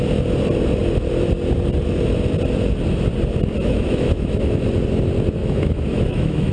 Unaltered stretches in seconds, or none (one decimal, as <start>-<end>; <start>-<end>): 0.0-3.6; 4.7-5.4